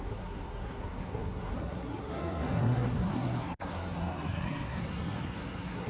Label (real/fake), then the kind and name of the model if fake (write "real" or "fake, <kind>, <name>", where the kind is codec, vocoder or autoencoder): fake, codec, SNAC